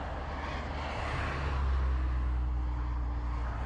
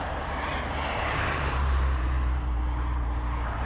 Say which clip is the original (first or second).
first